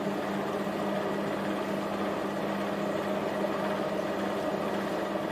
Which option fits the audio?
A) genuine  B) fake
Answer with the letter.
A